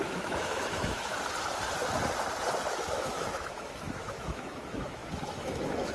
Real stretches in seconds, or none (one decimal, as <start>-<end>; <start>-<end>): 1.1-2.7